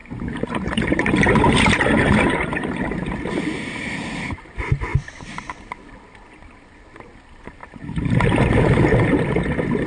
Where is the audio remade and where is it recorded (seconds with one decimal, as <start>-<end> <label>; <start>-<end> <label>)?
0.0-4.2 remade; 4.2-4.9 recorded; 4.9-5.5 remade; 5.5-7.6 recorded; 7.6-8.4 remade; 8.4-9.9 recorded